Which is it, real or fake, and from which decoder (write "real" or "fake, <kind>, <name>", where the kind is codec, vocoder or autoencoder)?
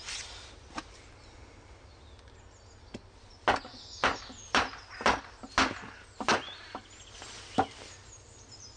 real